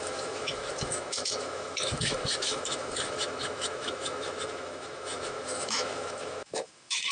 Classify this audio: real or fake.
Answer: fake